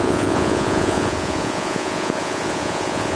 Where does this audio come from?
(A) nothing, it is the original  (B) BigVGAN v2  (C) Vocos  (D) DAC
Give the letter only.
C